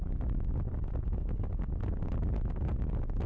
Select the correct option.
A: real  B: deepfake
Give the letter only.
A